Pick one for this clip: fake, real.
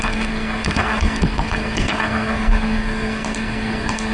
fake